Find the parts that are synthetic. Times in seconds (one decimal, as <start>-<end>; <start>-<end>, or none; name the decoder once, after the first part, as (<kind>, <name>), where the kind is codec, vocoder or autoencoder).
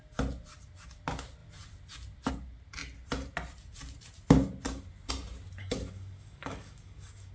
5.6-7.3 (codec, DAC)